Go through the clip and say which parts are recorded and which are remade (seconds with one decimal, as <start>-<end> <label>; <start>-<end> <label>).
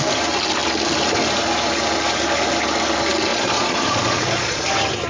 0.0-3.3 recorded; 3.3-4.6 remade; 4.6-5.1 recorded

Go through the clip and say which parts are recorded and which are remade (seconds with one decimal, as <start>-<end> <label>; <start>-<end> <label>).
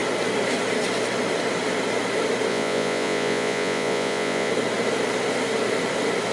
0.0-2.5 recorded; 2.5-4.5 remade; 4.5-6.3 recorded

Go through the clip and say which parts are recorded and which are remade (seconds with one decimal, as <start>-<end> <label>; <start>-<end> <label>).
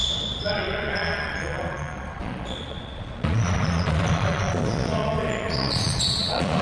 0.0-6.6 remade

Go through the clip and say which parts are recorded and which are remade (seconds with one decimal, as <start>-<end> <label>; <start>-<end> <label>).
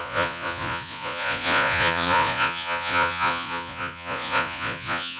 0.0-5.2 remade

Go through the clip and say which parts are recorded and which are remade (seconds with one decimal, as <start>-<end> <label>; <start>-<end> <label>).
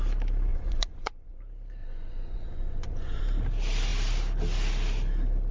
0.0-0.5 recorded; 0.5-1.4 remade; 1.4-1.8 recorded; 1.8-3.2 remade; 3.2-5.5 recorded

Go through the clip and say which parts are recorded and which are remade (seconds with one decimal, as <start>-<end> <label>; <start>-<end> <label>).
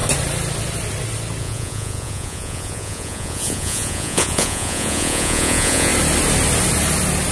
0.0-1.4 recorded; 1.4-5.9 remade; 5.9-7.3 recorded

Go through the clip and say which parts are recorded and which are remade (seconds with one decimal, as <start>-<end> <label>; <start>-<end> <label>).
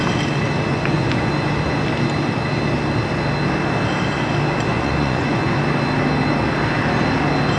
0.0-0.7 recorded; 0.7-1.3 remade; 1.3-4.7 recorded; 4.7-5.6 remade; 5.6-7.6 recorded